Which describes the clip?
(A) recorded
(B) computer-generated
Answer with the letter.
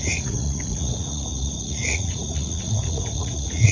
B